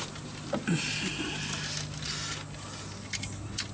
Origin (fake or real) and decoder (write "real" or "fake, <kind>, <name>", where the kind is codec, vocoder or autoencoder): real